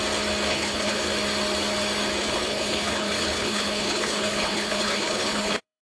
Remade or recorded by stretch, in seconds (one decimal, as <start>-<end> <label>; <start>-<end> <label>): 0.0-0.5 recorded; 0.5-1.0 remade; 1.0-2.2 recorded; 2.2-5.8 remade